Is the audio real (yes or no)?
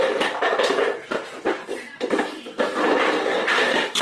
no